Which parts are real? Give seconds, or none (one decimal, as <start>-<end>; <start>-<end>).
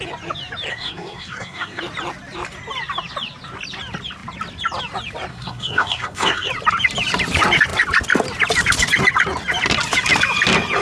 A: 0.0-0.7; 1.8-5.3; 6.5-10.8